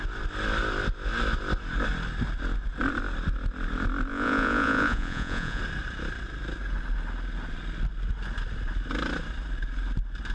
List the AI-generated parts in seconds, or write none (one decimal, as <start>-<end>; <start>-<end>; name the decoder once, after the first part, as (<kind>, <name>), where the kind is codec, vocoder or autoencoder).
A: 4.1-5.6 (vocoder, Vocos)